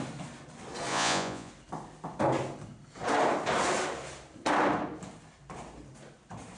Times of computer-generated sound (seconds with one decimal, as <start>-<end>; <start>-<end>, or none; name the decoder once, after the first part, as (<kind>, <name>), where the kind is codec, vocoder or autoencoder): 0.9-1.5 (vocoder, Vocos)